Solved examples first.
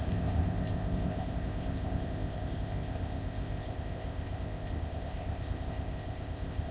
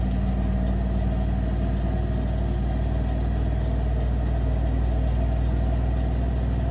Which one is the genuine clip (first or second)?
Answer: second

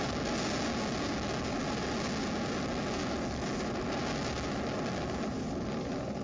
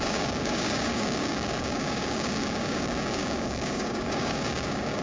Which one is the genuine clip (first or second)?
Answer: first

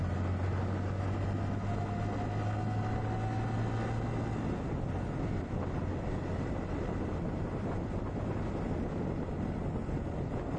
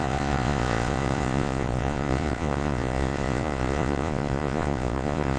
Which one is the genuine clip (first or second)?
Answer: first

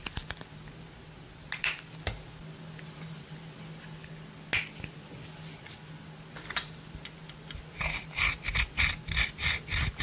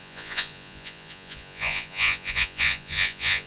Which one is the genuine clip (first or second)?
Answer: first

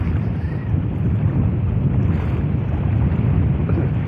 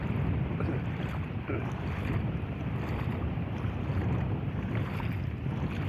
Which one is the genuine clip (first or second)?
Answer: first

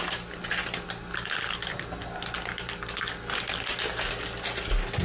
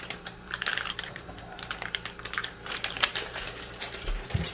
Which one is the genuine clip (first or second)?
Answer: first